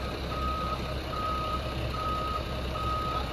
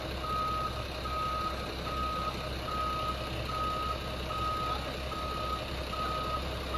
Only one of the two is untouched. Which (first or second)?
second